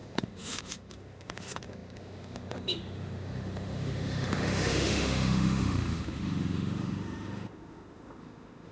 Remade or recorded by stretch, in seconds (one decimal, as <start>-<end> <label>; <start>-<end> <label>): 0.0-8.7 remade